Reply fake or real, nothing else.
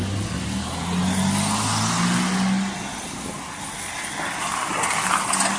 real